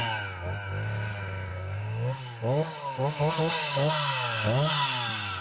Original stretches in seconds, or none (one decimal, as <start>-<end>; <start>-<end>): 0.0-1.5; 4.7-5.4